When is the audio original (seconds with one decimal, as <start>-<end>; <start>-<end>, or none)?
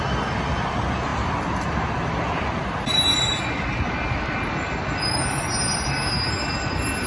0.0-7.1